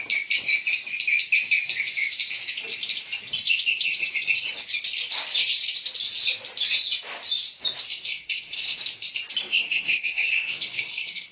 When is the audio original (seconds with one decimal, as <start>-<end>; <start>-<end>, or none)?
0.0-8.1; 8.8-9.5